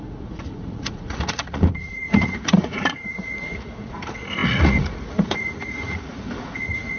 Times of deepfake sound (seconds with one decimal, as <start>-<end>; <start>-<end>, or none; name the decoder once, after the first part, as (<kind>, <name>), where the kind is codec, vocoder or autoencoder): 0.0-7.0 (vocoder, Vocos)